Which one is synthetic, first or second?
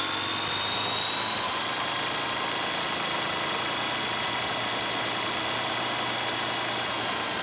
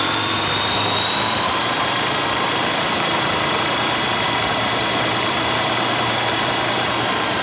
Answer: second